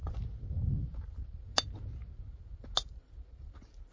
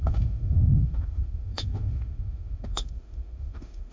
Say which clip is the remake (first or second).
second